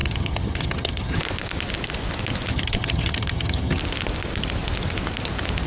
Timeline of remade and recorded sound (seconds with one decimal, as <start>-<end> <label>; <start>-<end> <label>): 0.0-1.2 remade; 1.2-2.5 recorded; 2.5-3.8 remade; 3.8-5.7 recorded